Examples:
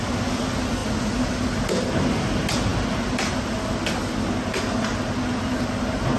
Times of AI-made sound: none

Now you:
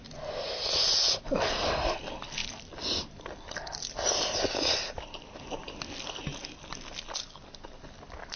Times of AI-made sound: 2.4-5.8 (vocoder, BigVGAN v2)

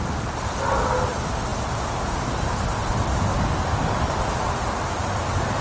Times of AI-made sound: none